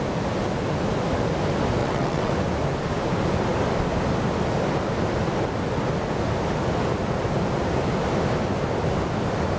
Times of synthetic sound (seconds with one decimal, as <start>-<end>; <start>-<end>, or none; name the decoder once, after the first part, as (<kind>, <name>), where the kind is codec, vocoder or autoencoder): 1.8-2.3 (vocoder, WaveNeXt)